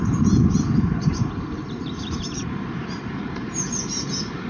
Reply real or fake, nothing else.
fake